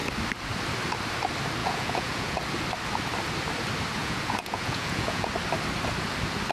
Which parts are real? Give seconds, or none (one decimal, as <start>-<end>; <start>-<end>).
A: 0.0-1.6; 2.4-4.0; 5.3-6.5